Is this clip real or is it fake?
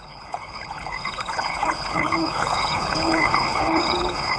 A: fake